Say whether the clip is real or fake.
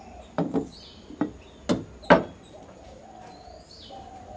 real